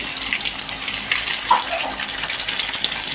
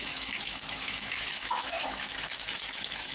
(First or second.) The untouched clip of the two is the first